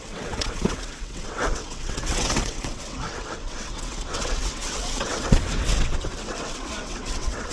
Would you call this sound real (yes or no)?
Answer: no